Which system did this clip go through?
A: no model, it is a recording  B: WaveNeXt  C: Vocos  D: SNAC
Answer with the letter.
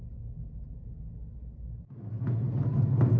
A